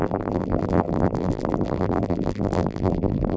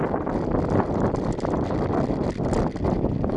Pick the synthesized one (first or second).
first